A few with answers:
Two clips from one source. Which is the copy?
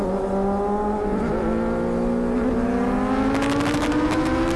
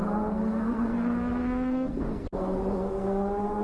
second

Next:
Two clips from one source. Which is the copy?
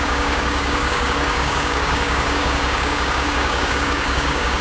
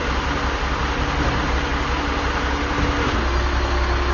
first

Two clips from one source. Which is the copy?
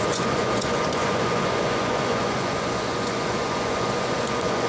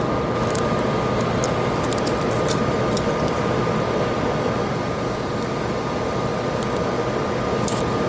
first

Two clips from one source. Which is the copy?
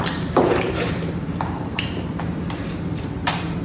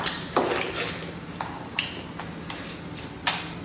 first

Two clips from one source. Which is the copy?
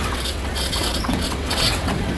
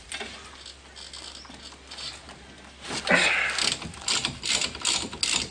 first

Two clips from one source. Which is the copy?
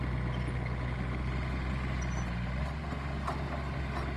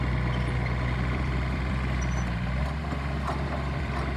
second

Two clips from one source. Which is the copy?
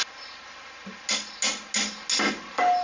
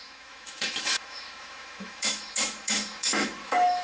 second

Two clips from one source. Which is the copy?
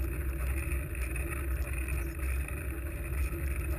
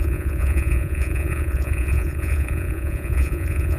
second